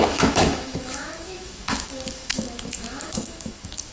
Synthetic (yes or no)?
yes